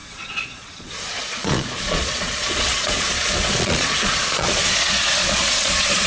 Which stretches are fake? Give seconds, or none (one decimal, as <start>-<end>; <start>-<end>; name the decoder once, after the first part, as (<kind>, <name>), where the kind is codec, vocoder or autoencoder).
0.0-6.1 (vocoder, Vocos)